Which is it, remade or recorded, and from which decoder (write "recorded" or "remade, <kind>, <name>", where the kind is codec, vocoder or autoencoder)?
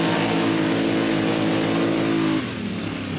recorded